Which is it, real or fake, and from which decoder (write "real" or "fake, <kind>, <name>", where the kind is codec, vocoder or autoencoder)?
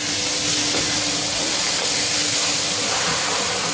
real